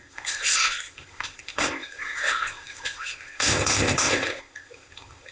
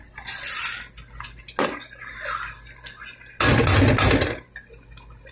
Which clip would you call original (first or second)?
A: second